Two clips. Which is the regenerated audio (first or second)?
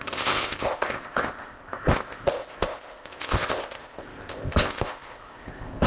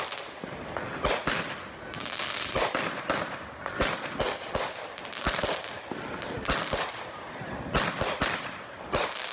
first